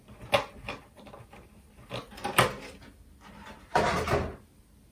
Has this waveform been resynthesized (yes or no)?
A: no